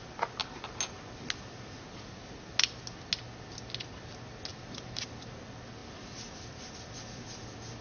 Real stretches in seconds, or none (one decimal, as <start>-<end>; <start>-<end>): 0.0-4.5; 5.0-7.8